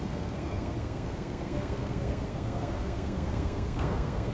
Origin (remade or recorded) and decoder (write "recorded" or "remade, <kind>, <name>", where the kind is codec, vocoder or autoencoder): remade, codec, SNAC